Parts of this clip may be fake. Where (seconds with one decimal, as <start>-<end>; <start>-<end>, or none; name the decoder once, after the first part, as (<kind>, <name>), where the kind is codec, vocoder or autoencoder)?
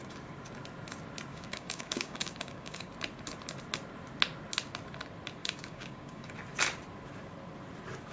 1.3-2.9 (codec, DAC); 5.4-6.3